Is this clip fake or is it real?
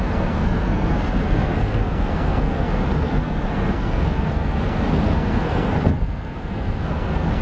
fake